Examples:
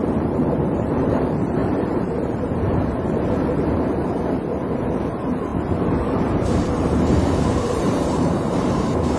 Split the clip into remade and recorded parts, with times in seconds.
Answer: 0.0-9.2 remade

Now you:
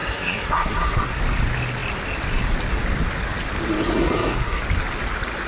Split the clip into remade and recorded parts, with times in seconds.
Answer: 0.0-1.2 remade; 1.2-3.8 recorded; 3.8-4.6 remade; 4.6-5.5 recorded

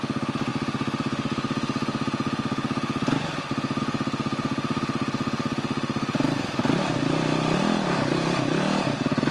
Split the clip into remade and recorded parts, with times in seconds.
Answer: 0.0-9.3 recorded

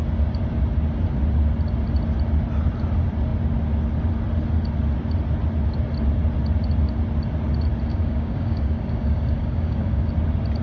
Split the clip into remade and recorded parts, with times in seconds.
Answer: 0.0-7.9 recorded; 7.9-10.1 remade; 10.1-10.6 recorded

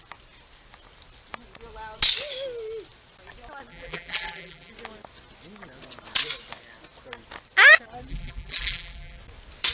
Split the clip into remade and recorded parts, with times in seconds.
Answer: 0.0-3.7 recorded; 3.7-4.7 remade; 4.7-8.1 recorded; 8.1-9.2 remade; 9.2-9.7 recorded

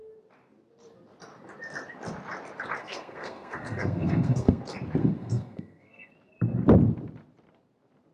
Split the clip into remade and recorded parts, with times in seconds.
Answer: 0.0-2.8 recorded; 2.8-4.6 remade; 4.6-5.0 recorded; 5.0-6.1 remade; 6.1-8.1 recorded

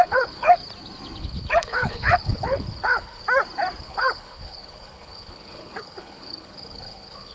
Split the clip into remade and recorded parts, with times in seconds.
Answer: 0.0-0.6 remade; 0.6-1.2 recorded; 1.2-3.2 remade; 3.2-3.8 recorded; 3.8-7.3 remade